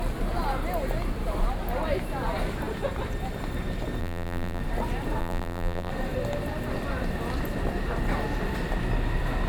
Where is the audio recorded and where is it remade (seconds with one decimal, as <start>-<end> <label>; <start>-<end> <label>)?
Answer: 0.0-4.0 recorded; 4.0-4.6 remade; 4.6-5.2 recorded; 5.2-5.9 remade; 5.9-9.5 recorded